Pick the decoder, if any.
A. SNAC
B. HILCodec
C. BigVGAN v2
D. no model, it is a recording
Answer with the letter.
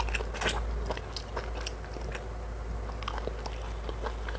D